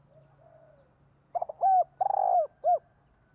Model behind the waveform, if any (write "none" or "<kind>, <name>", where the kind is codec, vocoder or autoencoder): none